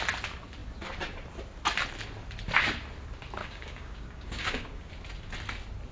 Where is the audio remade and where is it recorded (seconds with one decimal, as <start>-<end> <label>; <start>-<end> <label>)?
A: 0.0-3.4 recorded; 3.4-4.9 remade; 4.9-5.9 recorded